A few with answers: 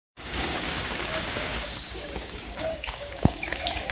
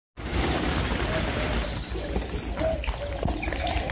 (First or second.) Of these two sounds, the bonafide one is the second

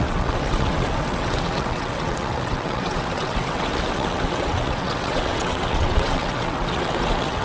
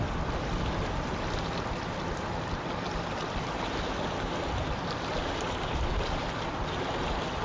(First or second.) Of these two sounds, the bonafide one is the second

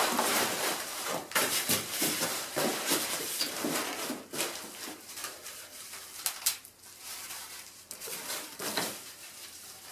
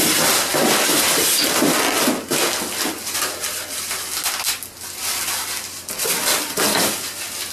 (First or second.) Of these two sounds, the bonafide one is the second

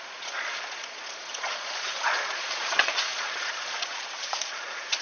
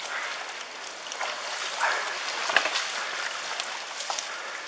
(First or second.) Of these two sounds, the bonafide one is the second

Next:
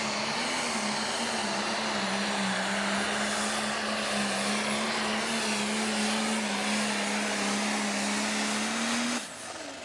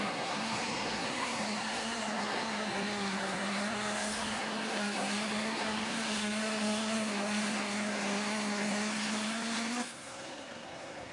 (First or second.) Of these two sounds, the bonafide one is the first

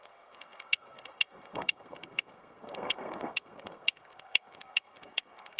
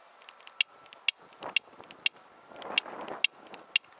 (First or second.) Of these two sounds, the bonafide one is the second